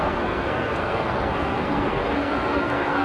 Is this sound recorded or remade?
remade